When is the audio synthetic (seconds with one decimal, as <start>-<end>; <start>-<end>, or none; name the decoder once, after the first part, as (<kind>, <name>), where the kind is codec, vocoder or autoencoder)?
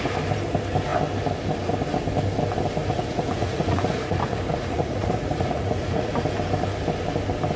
2.8-6.1 (vocoder, Vocos)